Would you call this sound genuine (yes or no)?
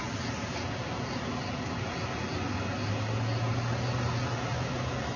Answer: yes